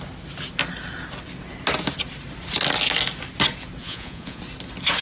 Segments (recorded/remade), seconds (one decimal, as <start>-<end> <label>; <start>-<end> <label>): 0.0-3.8 recorded; 3.8-4.4 remade; 4.4-5.0 recorded

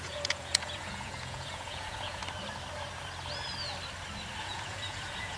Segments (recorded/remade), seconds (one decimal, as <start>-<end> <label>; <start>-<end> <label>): 0.0-2.2 remade; 2.2-4.4 recorded; 4.4-5.4 remade